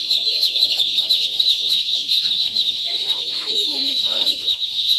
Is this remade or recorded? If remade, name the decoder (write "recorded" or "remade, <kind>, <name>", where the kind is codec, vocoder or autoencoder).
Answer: remade, autoencoder, DAC-VAE